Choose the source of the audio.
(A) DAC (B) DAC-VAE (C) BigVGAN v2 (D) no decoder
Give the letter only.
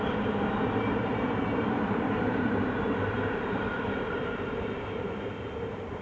C